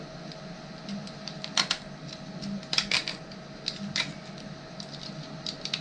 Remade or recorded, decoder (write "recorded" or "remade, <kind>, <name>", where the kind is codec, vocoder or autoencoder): recorded